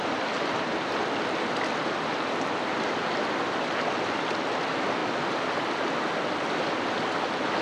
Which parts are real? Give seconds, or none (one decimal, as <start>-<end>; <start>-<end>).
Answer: 0.0-7.6